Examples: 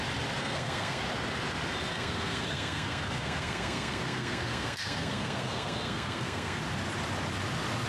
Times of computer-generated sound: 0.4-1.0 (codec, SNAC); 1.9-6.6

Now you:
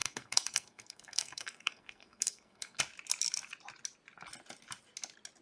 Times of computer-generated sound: 0.0-2.8 (codec, SNAC)

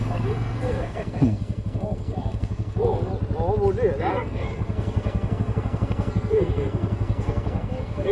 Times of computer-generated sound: 0.0-3.1 (codec, SNAC); 4.1-8.1

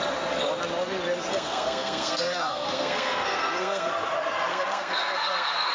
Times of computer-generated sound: 1.3-3.9 (codec, SNAC); 4.5-5.7

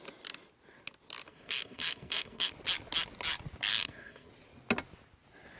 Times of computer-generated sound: 1.3-2.5 (codec, SNAC); 3.7-4.3

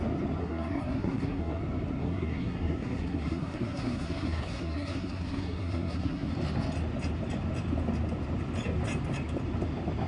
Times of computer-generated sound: 0.4-1.6 (codec, SNAC); 2.0-6.3

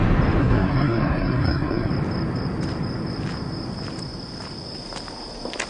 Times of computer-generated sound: 0.4-1.9 (codec, SNAC)

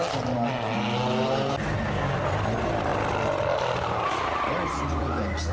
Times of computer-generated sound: none